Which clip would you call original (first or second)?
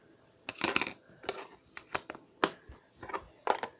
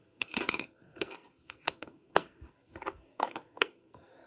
first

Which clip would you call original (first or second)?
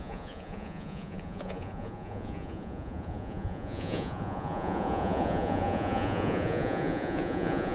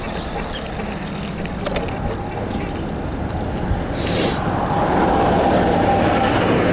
second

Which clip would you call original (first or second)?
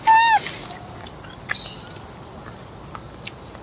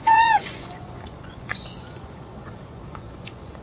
first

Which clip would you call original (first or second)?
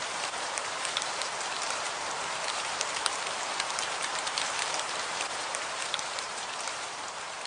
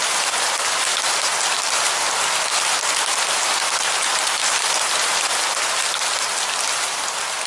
second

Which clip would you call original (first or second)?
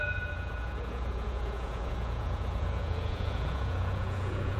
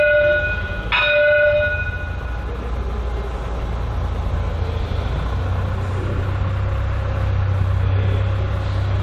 second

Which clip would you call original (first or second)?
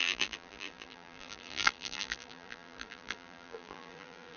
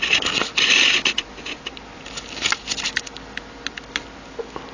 second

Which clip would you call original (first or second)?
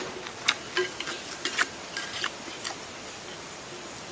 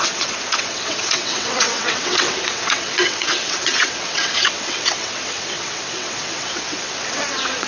first